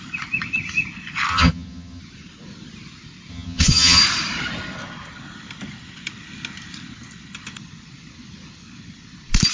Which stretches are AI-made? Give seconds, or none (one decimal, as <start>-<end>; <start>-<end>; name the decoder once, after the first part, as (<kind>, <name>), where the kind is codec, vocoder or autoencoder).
1.3-2.0 (vocoder, HiFi-GAN); 3.3-4.0

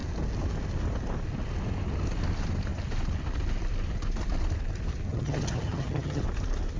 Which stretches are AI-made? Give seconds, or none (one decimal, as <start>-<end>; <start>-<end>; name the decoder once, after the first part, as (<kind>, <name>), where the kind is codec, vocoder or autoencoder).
5.1-6.2 (vocoder, HiFi-GAN)

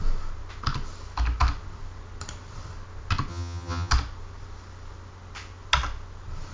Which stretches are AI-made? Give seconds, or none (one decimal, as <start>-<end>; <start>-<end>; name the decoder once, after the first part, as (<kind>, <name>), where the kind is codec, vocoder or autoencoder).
3.3-3.9 (vocoder, HiFi-GAN)

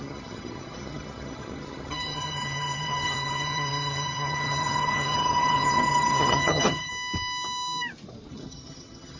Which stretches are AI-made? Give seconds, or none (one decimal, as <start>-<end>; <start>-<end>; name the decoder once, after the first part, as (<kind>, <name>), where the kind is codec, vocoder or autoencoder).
0.0-6.9 (vocoder, HiFi-GAN); 8.3-9.2

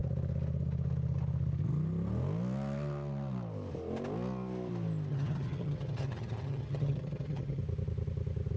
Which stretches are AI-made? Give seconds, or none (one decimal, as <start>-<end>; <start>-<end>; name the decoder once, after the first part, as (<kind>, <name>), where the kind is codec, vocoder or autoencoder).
5.1-7.6 (vocoder, HiFi-GAN)

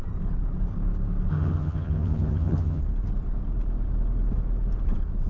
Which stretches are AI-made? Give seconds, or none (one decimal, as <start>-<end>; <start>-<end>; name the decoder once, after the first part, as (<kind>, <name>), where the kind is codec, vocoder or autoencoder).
1.3-2.8 (vocoder, HiFi-GAN)

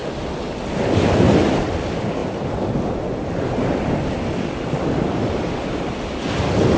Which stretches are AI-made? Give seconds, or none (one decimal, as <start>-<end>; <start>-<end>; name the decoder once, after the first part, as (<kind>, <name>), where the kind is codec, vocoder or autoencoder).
none